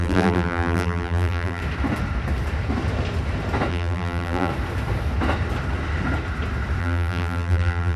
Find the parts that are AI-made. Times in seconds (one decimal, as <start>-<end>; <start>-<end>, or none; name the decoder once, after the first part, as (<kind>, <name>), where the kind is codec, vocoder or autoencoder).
0.0-1.6 (vocoder, BigVGAN v2); 3.7-4.5; 6.8-8.0